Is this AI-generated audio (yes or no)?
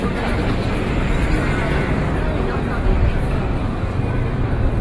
no